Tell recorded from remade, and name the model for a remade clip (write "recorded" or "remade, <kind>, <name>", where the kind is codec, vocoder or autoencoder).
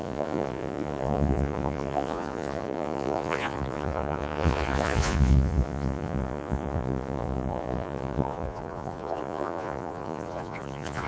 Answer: remade, vocoder, Vocos